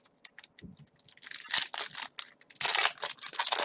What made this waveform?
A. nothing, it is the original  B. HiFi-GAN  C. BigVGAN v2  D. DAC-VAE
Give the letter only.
A